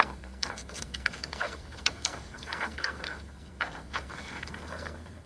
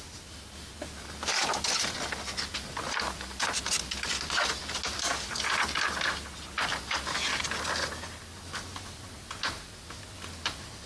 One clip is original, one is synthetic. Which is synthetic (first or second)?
first